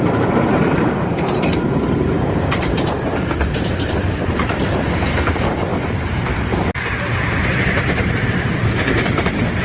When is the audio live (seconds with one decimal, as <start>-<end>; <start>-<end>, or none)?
none

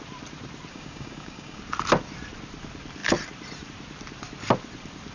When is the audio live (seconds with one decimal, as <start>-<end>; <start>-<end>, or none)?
0.0-0.7; 1.6-5.1

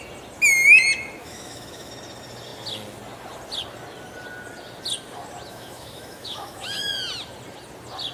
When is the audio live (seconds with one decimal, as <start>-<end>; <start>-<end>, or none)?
0.0-1.2; 1.9-5.5; 6.9-8.1

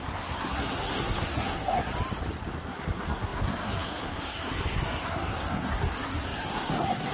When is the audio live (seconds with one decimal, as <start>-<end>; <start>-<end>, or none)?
1.9-2.6

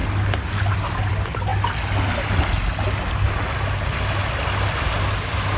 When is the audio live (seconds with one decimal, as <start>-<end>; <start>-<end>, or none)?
0.0-5.6

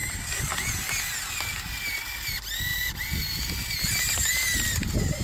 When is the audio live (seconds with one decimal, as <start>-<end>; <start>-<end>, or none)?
1.0-2.7